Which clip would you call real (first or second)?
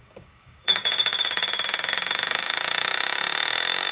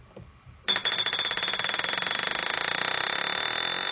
second